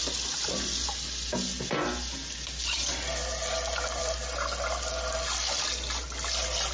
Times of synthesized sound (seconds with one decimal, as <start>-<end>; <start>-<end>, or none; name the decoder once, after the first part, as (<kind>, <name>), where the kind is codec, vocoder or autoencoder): none